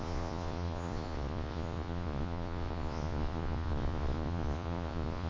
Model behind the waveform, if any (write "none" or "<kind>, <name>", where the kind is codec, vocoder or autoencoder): vocoder, Vocos